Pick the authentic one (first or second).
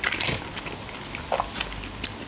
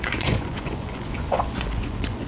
first